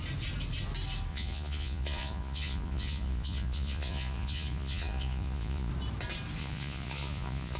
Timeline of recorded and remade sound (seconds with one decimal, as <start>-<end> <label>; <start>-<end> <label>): 0.0-1.1 recorded; 1.1-5.7 remade; 5.7-6.4 recorded; 6.4-7.6 remade